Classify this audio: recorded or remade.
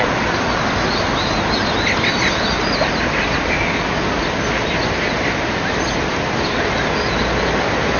recorded